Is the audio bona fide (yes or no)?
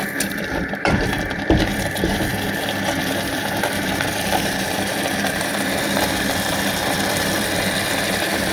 no